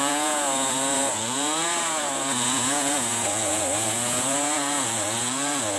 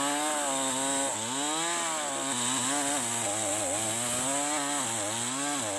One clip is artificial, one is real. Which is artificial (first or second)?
first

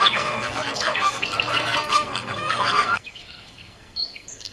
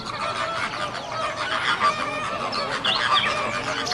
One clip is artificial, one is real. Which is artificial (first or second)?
first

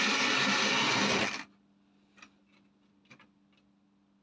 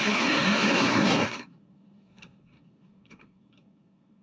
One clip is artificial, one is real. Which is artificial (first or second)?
second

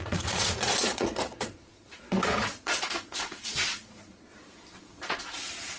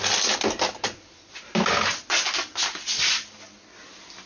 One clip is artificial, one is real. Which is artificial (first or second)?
first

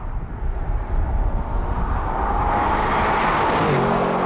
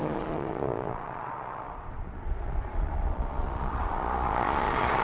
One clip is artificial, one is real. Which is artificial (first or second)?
second